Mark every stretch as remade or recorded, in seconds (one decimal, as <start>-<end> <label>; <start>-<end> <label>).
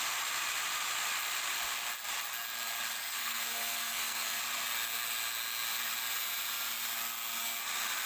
0.0-3.0 recorded; 3.0-4.4 remade; 4.4-8.1 recorded